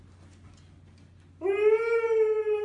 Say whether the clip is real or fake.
real